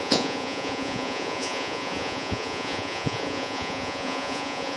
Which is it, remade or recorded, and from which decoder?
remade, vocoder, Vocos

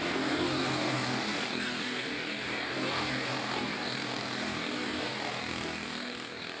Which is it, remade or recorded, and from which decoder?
remade, codec, DAC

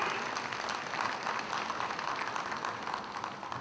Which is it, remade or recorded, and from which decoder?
recorded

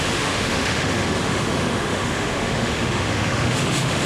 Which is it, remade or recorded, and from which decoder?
remade, autoencoder, DAC-VAE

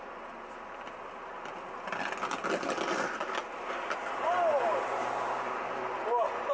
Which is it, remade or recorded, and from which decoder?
recorded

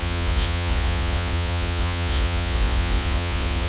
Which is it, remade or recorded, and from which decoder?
remade, vocoder, Vocos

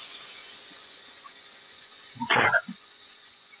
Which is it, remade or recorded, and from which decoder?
remade, vocoder, Vocos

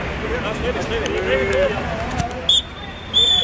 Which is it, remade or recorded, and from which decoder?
recorded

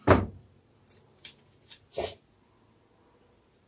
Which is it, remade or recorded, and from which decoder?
recorded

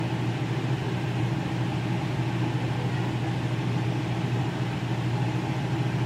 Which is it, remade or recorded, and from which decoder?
recorded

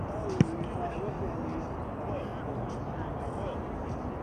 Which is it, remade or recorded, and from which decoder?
recorded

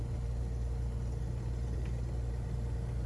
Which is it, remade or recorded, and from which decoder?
recorded